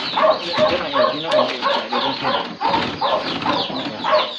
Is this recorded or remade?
recorded